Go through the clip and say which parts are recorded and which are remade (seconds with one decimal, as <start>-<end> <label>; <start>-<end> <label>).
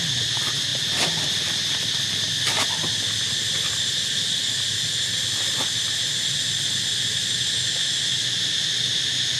0.0-9.4 recorded